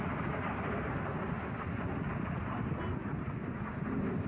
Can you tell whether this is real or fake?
real